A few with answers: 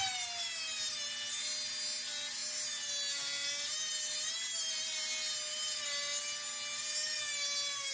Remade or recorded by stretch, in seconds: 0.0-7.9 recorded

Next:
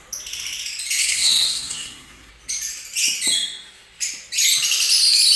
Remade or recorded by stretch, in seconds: 0.0-1.0 recorded; 1.0-2.3 remade; 2.3-5.4 recorded